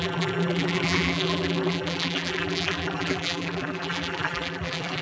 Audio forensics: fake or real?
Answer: fake